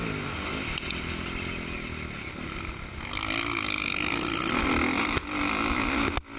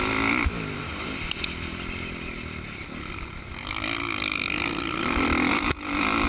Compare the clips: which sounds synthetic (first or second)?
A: second